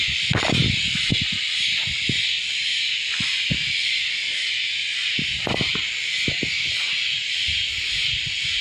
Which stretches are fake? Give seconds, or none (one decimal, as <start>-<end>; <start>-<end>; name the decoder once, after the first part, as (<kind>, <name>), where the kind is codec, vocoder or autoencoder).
none

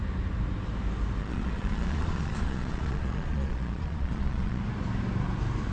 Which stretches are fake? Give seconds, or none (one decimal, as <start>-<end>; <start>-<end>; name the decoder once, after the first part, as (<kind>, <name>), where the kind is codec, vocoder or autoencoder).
1.2-4.6 (vocoder, Vocos)

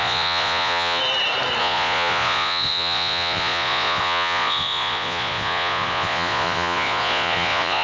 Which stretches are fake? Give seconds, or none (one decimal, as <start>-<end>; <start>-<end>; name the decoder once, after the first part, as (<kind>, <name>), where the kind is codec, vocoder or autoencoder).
0.0-1.0 (vocoder, Vocos); 1.6-7.8

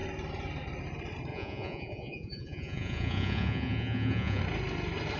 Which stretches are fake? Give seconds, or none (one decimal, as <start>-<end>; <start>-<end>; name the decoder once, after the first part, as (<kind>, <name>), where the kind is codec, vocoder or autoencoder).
1.3-4.4 (vocoder, Vocos)

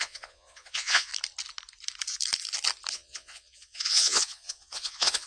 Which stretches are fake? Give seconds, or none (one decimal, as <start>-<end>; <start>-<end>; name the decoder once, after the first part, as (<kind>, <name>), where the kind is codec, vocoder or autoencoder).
0.0-1.1 (vocoder, Vocos); 2.9-5.3

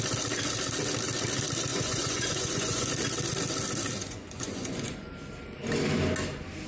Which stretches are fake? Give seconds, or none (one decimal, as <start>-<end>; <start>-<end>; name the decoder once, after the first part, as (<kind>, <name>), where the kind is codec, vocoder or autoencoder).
1.7-2.9 (vocoder, Vocos); 4.0-5.1